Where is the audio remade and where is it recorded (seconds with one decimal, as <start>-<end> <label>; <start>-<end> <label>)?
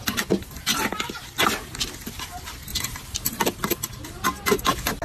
0.0-2.7 recorded; 2.7-3.4 remade; 3.4-5.0 recorded